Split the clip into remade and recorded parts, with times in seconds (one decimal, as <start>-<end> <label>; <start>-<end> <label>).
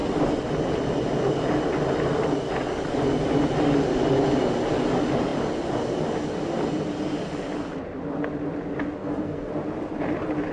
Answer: 0.0-9.0 recorded; 9.0-9.5 remade; 9.5-10.5 recorded